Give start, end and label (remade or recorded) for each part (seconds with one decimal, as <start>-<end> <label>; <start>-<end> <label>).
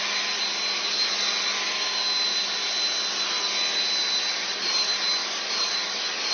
0.0-6.3 recorded